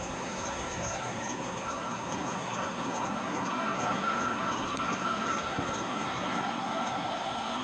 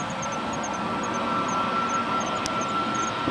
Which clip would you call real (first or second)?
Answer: second